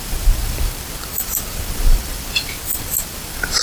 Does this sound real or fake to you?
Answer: fake